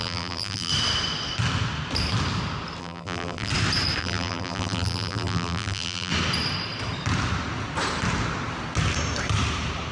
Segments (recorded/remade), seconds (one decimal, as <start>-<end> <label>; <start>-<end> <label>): 0.0-0.7 remade; 0.7-2.8 recorded; 2.8-3.5 remade; 3.5-4.0 recorded; 4.0-6.1 remade; 6.1-9.9 recorded